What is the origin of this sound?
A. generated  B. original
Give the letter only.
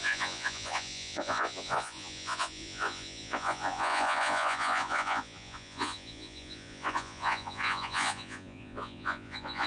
A